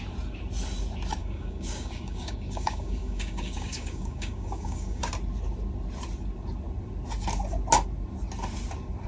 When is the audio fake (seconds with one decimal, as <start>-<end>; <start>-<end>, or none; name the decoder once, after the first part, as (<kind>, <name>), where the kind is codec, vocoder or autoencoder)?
1.2-5.0 (codec, DAC)

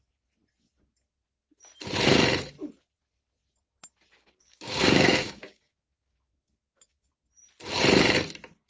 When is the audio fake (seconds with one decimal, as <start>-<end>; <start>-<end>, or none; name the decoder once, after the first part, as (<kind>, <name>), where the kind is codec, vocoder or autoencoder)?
4.2-7.1 (codec, DAC)